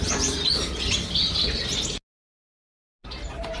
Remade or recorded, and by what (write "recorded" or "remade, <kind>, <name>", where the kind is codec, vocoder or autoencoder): recorded